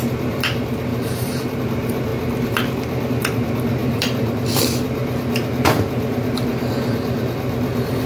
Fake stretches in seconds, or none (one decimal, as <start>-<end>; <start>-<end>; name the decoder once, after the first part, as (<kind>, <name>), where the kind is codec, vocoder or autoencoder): 0.9-1.6 (vocoder, BigVGAN v2); 3.8-4.3